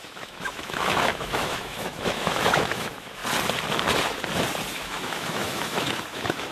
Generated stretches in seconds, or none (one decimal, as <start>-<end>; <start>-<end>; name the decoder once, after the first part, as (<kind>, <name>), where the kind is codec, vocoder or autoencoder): 0.0-3.2 (autoencoder, DAC-VAE); 4.7-6.5